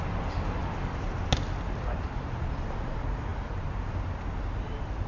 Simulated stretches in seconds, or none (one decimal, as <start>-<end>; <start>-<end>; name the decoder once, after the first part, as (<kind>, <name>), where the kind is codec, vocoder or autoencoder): none